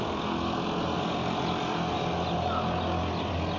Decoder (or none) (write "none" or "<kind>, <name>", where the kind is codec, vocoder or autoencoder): none